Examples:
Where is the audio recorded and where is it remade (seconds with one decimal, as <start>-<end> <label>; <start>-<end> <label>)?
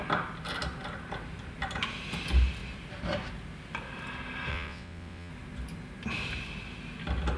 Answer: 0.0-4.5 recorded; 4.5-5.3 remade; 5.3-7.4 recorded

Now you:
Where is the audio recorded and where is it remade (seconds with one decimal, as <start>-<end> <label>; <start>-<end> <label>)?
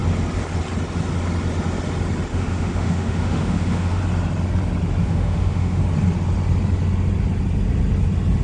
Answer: 0.0-2.3 recorded; 2.3-4.0 remade; 4.0-5.0 recorded; 5.0-5.8 remade; 5.8-8.4 recorded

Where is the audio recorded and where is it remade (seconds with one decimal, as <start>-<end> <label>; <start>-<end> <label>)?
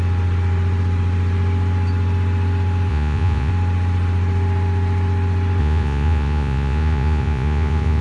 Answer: 0.0-2.9 recorded; 2.9-3.5 remade; 3.5-5.6 recorded; 5.6-8.0 remade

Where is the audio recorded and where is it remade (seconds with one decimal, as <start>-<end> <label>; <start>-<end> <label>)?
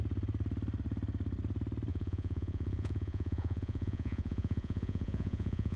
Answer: 0.0-1.9 recorded; 1.9-5.8 remade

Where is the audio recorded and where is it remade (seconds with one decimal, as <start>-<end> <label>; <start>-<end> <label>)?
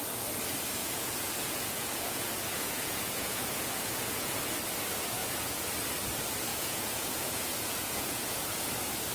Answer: 0.0-0.8 recorded; 0.8-4.4 remade; 4.4-5.2 recorded; 5.2-5.7 remade; 5.7-6.5 recorded; 6.5-8.7 remade; 8.7-9.1 recorded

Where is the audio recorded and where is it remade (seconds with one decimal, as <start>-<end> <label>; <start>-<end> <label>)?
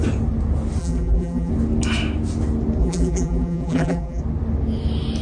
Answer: 0.0-0.8 recorded; 0.8-1.5 remade; 1.5-2.8 recorded; 2.8-4.2 remade; 4.2-5.2 recorded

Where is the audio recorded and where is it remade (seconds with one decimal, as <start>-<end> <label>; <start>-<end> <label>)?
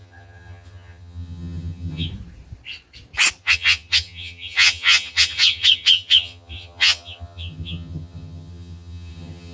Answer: 0.0-2.1 remade; 2.1-3.4 recorded; 3.4-9.5 remade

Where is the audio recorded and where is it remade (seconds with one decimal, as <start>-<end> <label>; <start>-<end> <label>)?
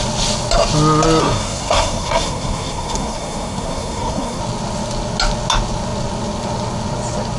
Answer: 0.0-1.2 recorded; 1.2-4.4 remade; 4.4-7.4 recorded